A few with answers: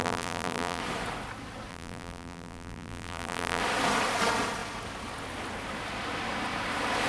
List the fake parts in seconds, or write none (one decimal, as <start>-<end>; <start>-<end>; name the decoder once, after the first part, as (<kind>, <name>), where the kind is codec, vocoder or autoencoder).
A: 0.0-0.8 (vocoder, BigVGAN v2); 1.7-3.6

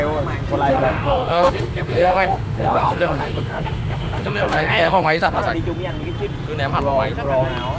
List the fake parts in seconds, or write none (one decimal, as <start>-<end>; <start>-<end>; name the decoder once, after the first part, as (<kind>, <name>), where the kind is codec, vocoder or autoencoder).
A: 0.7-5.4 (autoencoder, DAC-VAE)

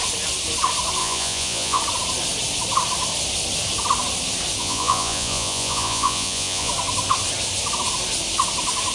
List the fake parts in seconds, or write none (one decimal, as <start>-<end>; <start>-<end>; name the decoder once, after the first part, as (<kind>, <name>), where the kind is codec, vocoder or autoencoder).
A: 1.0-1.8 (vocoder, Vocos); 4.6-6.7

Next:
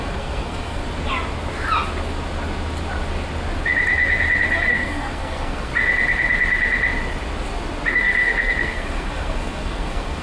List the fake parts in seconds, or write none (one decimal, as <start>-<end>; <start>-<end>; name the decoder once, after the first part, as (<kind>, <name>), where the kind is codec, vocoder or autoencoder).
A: 0.0-0.8 (codec, SNAC); 4.7-5.7; 7.9-10.2